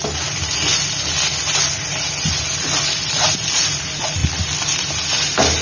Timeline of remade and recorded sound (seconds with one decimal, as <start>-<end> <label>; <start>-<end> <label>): 0.0-5.6 recorded